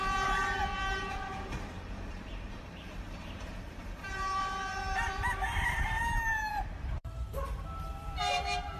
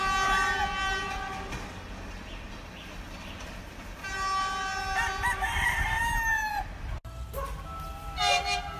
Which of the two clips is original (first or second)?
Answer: second